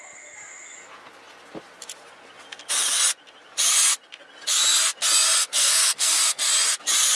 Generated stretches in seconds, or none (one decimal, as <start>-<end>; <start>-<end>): 5.4-6.5